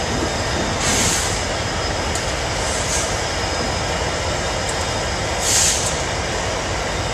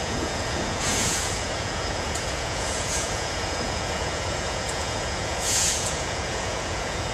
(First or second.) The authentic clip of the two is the first